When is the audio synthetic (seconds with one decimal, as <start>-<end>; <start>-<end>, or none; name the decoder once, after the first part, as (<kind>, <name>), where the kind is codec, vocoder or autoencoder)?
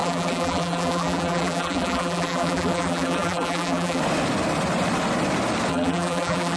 0.0-4.0 (vocoder, BigVGAN v2); 5.7-6.6